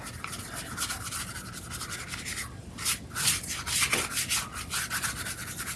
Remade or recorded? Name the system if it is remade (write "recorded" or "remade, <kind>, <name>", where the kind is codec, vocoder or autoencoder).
recorded